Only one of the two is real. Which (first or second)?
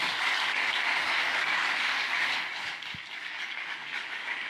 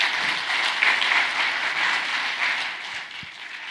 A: second